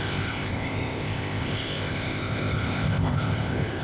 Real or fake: fake